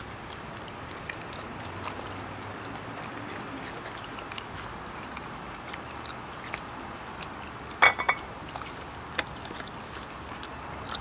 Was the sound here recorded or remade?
recorded